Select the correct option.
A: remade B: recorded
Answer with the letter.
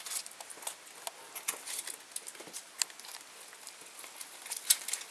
B